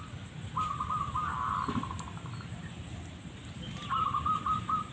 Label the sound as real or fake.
real